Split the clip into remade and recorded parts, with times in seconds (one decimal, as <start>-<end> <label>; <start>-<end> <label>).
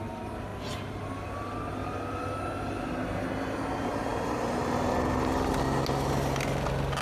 0.0-7.0 recorded